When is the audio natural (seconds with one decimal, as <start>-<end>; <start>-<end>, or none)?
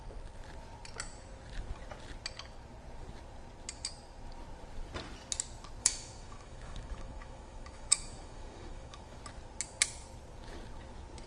0.0-5.8; 9.2-11.3